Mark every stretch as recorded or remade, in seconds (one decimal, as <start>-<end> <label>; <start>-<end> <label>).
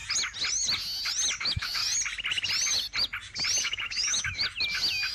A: 0.0-1.4 recorded; 1.4-1.8 remade; 1.8-3.6 recorded; 3.6-4.4 remade; 4.4-5.1 recorded